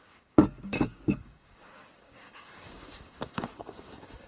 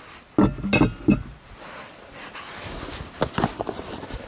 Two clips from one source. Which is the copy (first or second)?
first